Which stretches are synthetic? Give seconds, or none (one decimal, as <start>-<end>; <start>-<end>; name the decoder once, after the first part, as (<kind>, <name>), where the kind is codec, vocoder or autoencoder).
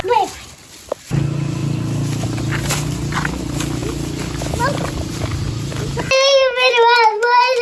none